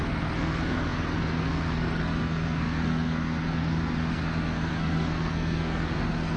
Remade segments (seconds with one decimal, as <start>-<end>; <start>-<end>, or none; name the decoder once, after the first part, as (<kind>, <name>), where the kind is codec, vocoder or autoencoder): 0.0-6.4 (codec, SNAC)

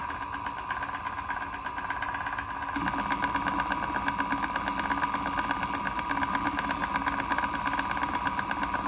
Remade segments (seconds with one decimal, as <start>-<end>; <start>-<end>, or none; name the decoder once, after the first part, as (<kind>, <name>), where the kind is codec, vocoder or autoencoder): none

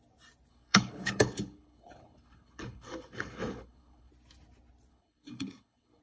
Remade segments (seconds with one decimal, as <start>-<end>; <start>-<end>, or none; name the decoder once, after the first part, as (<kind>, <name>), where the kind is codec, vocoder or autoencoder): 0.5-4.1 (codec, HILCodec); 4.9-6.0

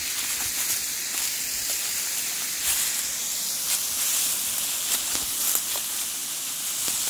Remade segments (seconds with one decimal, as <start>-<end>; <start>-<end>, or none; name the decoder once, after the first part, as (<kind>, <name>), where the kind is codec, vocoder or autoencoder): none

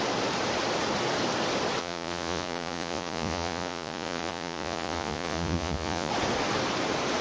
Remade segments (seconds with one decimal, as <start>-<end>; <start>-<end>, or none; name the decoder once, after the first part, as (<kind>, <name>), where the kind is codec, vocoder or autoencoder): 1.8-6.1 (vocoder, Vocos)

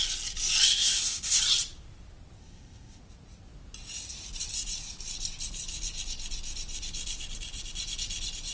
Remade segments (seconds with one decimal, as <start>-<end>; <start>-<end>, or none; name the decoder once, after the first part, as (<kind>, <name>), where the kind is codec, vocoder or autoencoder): 0.7-1.4 (codec, ZipCodec); 2.4-3.0

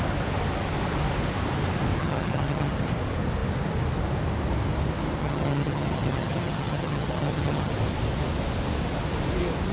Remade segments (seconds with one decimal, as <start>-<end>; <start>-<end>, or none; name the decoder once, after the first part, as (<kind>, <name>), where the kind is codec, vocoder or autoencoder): 2.0-2.7 (vocoder, HiFi-GAN); 5.2-7.7